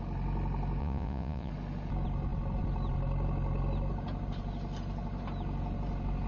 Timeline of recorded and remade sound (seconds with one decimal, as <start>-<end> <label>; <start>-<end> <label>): 0.0-0.8 recorded; 0.8-1.5 remade; 1.5-6.3 recorded